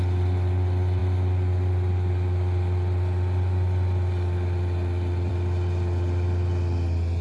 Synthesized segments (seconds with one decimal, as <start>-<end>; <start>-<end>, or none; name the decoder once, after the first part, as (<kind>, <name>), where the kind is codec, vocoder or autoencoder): none